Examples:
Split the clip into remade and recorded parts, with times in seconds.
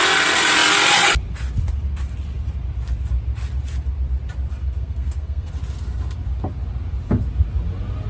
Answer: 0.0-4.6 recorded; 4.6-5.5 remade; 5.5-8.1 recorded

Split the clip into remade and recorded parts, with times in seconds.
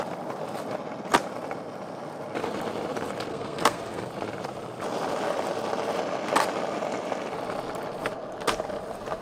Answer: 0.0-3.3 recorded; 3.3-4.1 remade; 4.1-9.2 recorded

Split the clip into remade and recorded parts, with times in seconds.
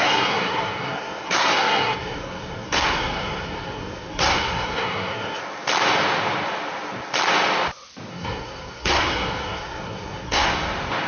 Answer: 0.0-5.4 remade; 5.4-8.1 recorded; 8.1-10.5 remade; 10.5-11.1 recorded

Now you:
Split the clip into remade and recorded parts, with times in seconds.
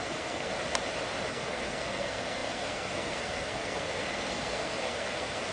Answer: 0.0-0.5 remade; 0.5-1.3 recorded; 1.3-5.5 remade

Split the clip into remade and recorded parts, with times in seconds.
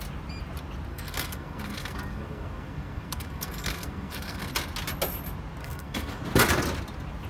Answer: 0.0-0.9 recorded; 0.9-4.5 remade; 4.5-5.6 recorded; 5.6-6.2 remade; 6.2-7.3 recorded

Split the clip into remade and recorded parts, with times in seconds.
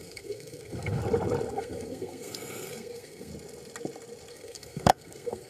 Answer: 0.0-1.0 remade; 1.0-1.5 recorded; 1.5-3.3 remade; 3.3-4.3 recorded; 4.3-5.5 remade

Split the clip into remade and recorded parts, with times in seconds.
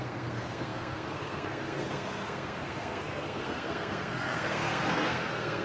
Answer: 0.0-5.6 remade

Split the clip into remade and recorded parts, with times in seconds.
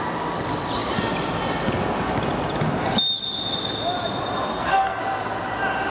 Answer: 0.0-4.5 recorded; 4.5-5.0 remade; 5.0-5.9 recorded